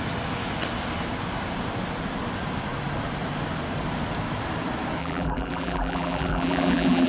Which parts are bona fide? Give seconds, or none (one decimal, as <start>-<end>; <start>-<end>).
0.0-5.0